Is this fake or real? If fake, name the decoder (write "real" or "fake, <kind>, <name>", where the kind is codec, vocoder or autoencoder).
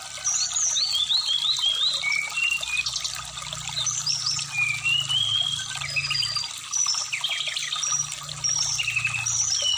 real